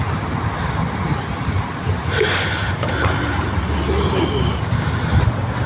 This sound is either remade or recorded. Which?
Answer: recorded